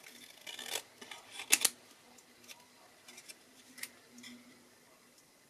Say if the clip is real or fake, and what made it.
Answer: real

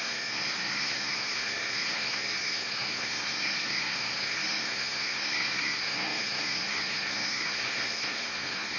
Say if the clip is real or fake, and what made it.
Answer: fake, codec, SNAC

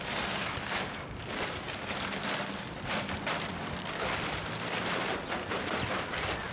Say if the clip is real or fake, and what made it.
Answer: real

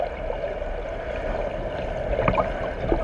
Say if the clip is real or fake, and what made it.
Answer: real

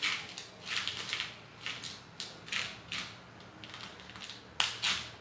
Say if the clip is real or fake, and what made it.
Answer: real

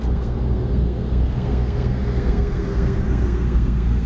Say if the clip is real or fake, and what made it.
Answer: fake, codec, SNAC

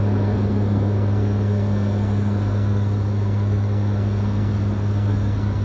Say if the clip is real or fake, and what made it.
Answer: fake, codec, SNAC